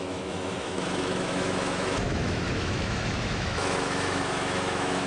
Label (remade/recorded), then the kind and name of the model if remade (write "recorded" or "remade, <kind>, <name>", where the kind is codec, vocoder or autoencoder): remade, autoencoder, DAC-VAE